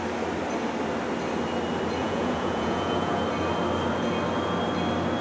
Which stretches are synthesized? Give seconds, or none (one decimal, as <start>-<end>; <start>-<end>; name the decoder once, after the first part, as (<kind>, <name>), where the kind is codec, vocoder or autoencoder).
2.0-3.2 (vocoder, Vocos)